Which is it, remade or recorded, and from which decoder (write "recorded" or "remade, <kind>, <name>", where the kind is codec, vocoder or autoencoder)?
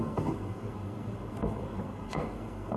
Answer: remade, codec, SNAC